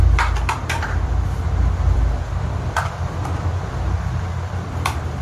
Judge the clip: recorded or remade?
remade